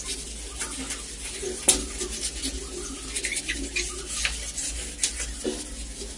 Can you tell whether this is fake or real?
real